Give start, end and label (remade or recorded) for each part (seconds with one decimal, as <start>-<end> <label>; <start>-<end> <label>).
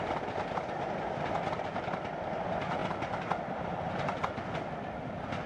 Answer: 0.0-5.5 recorded